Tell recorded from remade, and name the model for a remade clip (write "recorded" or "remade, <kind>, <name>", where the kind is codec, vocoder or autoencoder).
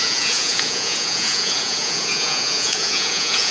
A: remade, vocoder, Vocos